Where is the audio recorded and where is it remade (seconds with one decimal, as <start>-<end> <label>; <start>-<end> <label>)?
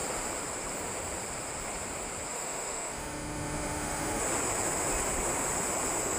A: 0.0-2.3 recorded; 2.3-4.2 remade; 4.2-6.2 recorded